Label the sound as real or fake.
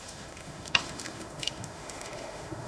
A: fake